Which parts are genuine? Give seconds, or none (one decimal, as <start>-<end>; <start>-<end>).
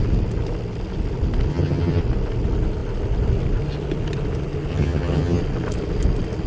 0.0-1.5; 2.0-4.7; 5.4-6.5